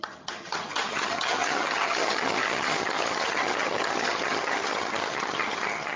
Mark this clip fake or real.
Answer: fake